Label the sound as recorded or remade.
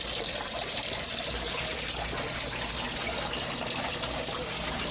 recorded